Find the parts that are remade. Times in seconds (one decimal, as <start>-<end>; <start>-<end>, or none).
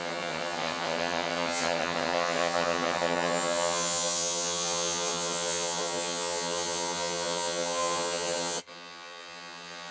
0.0-9.9